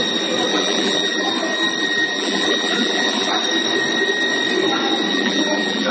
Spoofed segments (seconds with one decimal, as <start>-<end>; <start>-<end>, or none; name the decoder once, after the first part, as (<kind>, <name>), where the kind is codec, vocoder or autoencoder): 0.5-1.3 (vocoder, BigVGAN v2); 1.8-3.3; 5.1-5.9